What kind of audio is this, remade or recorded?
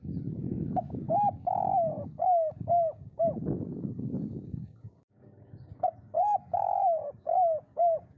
remade